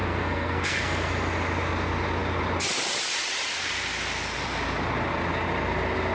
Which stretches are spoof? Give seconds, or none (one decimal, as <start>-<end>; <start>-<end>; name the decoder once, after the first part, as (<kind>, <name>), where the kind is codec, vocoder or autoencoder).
0.0-1.1 (codec, SNAC)